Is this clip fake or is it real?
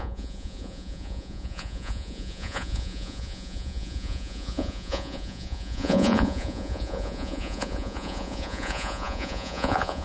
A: fake